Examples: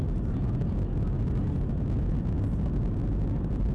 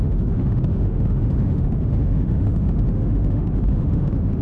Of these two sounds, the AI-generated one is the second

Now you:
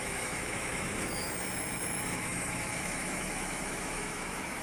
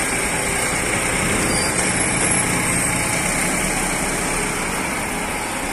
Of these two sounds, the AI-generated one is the first